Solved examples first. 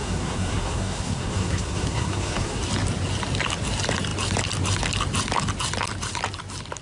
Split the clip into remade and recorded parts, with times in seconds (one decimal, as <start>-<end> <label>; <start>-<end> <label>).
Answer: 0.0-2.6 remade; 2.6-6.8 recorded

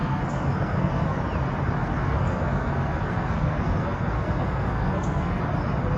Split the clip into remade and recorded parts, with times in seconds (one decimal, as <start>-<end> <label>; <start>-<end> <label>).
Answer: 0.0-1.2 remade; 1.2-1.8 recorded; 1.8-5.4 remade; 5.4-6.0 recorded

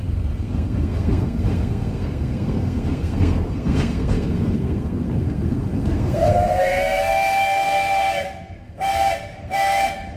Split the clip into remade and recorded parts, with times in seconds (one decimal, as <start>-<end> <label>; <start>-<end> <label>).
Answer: 0.0-10.2 remade

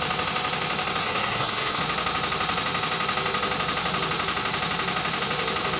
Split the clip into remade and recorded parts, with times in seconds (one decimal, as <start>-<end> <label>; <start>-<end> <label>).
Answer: 0.0-1.0 recorded; 1.0-1.8 remade; 1.8-5.8 recorded